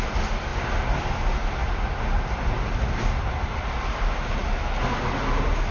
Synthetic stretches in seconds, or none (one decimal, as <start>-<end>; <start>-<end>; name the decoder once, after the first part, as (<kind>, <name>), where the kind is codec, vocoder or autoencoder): none